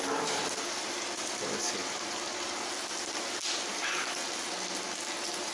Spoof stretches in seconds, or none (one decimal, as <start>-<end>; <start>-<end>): 0.0-0.4; 3.7-4.2

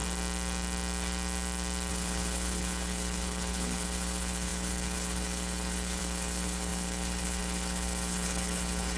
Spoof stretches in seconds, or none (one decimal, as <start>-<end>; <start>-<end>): 1.9-9.0

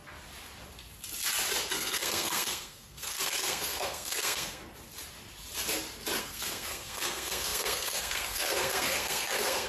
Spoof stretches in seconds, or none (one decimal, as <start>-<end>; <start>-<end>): 1.7-4.6; 6.2-9.7

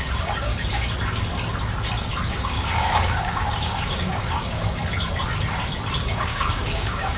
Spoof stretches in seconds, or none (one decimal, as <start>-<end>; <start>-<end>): 0.0-0.5; 2.3-4.8; 6.0-7.2

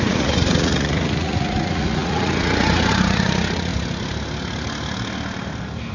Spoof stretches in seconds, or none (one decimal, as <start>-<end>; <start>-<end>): 0.0-3.7